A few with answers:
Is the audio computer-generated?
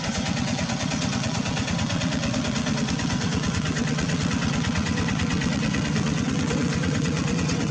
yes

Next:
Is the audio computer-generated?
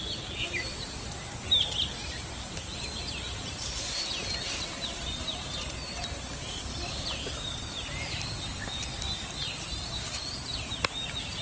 no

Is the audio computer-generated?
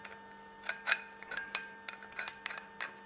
no